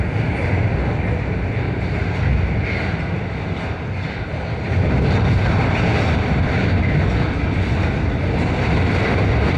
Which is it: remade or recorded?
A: recorded